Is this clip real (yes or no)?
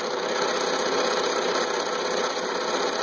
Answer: yes